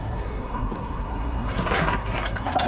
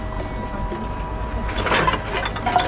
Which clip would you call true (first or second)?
second